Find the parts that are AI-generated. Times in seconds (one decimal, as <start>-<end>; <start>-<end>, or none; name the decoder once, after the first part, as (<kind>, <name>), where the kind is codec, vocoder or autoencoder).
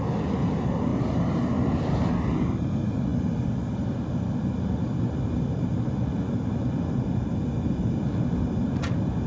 0.9-2.1 (vocoder, BigVGAN v2)